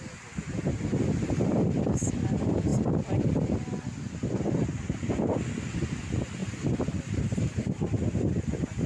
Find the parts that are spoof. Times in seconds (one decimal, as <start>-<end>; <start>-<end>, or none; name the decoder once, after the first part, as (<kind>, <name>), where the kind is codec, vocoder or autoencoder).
none